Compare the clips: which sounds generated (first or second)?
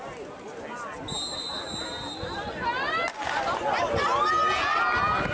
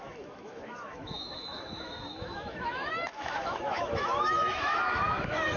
second